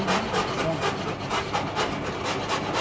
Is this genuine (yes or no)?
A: yes